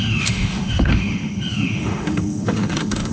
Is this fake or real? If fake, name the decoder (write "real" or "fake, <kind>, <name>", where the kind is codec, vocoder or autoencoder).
fake, autoencoder, DAC-VAE